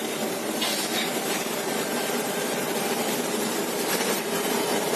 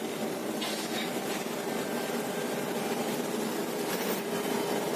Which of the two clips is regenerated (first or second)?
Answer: first